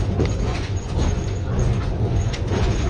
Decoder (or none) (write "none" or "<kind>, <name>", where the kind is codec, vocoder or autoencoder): vocoder, Vocos